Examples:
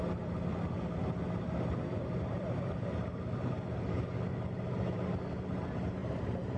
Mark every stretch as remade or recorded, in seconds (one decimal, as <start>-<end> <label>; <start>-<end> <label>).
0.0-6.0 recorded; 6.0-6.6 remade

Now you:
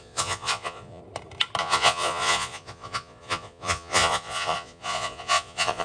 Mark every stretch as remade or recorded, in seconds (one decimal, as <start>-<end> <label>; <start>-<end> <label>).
0.0-1.0 remade; 1.0-1.6 recorded; 1.6-5.8 remade

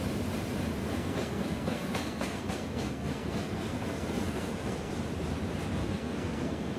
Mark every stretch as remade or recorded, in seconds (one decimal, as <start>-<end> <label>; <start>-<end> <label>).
0.0-0.8 recorded; 0.8-4.9 remade; 4.9-5.8 recorded; 5.8-6.8 remade

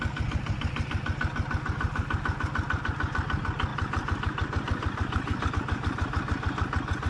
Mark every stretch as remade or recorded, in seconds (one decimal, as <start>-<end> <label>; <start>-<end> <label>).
0.0-3.7 recorded; 3.7-5.5 remade; 5.5-7.1 recorded

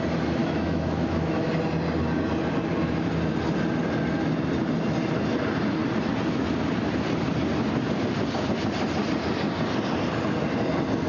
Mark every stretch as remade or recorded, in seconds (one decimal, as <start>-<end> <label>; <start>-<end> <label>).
0.0-0.4 recorded; 0.4-1.5 remade; 1.5-11.1 recorded

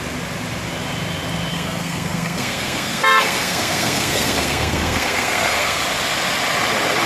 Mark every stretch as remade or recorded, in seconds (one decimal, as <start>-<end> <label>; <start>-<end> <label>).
0.0-1.5 recorded; 1.5-5.8 remade; 5.8-7.1 recorded